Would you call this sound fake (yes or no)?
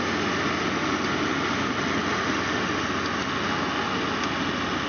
no